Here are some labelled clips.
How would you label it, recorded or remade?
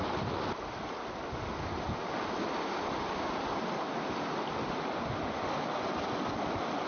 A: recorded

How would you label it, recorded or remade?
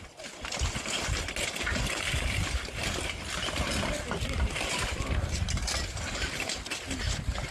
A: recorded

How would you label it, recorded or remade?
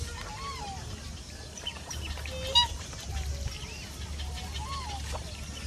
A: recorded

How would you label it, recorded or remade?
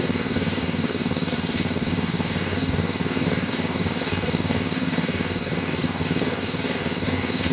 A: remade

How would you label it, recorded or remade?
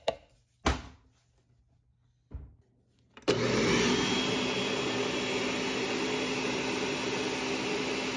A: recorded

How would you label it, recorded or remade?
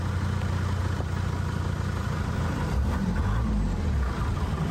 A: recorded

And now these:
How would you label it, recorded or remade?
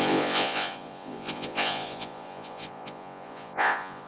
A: remade